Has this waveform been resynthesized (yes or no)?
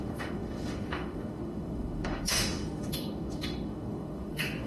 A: yes